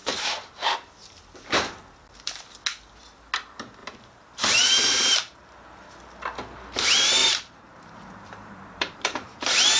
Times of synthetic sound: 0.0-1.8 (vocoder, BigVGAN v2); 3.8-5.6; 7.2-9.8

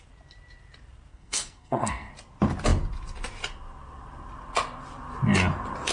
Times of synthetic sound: 1.1-2.1 (codec, SNAC)

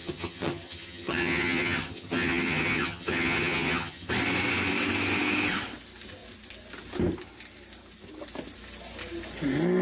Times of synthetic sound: 0.0-4.1 (vocoder, HiFi-GAN)

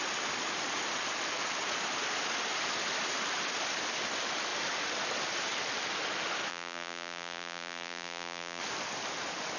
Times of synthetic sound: 6.5-8.6 (vocoder, BigVGAN v2)

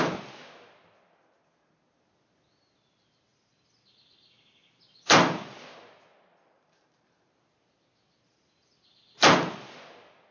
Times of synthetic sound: none